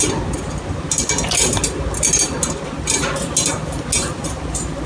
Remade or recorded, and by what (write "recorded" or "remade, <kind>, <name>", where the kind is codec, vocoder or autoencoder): recorded